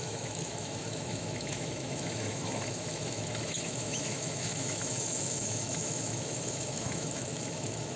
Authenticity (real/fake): fake